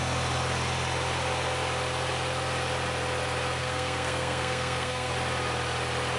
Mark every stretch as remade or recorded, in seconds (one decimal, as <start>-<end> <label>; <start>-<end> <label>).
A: 0.0-3.6 recorded; 3.6-5.1 remade; 5.1-6.2 recorded